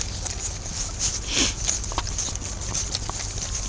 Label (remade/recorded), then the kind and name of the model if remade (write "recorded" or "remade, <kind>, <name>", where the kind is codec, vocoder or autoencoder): recorded